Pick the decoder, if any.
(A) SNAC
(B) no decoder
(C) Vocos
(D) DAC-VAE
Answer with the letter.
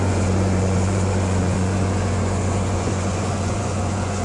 C